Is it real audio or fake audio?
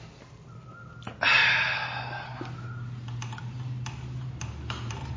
real